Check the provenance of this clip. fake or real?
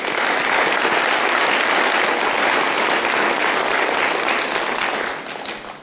real